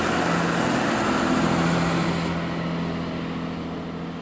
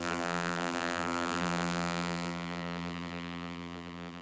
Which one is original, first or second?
first